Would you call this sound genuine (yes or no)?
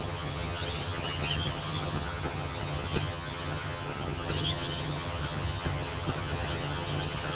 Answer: no